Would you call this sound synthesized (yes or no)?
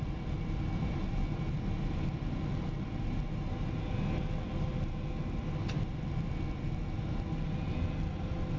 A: no